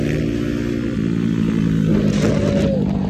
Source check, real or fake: real